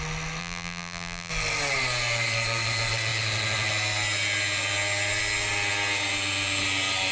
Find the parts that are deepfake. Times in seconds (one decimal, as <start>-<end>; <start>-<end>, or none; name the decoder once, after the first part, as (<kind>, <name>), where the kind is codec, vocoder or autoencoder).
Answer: 0.4-1.3 (vocoder, BigVGAN v2)